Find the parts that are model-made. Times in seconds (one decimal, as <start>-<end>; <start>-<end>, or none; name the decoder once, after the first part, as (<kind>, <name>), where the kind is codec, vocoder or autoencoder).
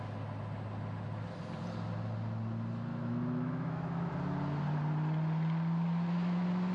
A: 2.9-4.1 (autoencoder, DAC-VAE)